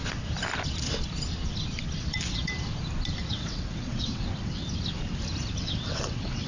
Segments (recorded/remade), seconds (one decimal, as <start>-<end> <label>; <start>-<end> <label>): 0.0-3.3 recorded; 3.3-4.6 remade; 4.6-5.6 recorded; 5.6-6.5 remade